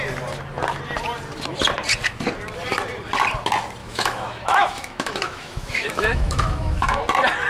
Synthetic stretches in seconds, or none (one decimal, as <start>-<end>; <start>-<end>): 3.8-7.0